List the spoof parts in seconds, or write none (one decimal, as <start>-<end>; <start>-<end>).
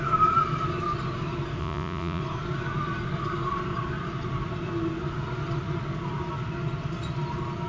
1.6-2.2